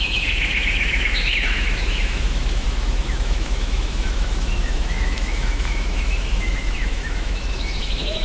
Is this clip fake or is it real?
fake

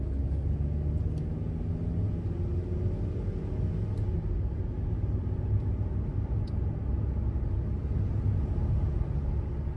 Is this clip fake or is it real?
real